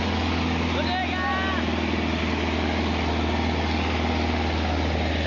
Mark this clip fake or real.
real